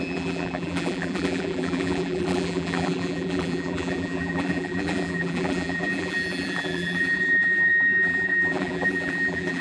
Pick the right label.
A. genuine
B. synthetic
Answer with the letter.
B